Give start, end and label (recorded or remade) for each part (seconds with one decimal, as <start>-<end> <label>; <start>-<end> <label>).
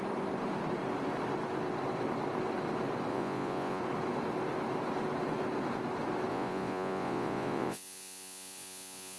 0.0-3.1 recorded; 3.1-3.8 remade; 3.8-6.3 recorded; 6.3-9.2 remade